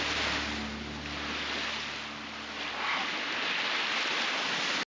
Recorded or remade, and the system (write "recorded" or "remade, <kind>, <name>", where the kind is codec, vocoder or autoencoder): recorded